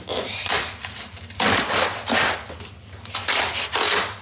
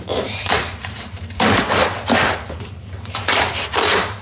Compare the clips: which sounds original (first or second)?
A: first